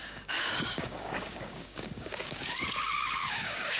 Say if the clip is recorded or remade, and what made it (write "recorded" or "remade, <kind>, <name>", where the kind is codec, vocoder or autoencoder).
remade, codec, DAC